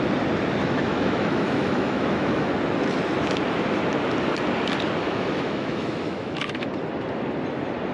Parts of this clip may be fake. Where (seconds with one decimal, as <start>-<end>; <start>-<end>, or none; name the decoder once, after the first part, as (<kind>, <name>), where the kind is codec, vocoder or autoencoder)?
0.6-2.5 (autoencoder, DAC-VAE); 5.0-6.7